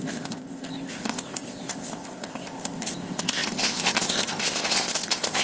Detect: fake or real fake